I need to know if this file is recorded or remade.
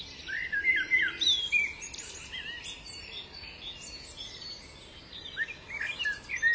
recorded